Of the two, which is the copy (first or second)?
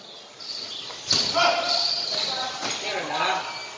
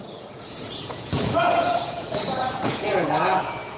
second